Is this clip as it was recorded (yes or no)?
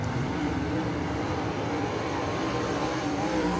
no